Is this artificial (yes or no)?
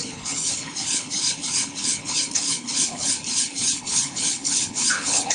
yes